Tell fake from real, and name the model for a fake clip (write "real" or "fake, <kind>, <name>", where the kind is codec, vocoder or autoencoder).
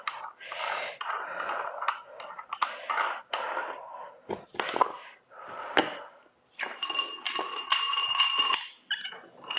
fake, vocoder, BigVGAN v2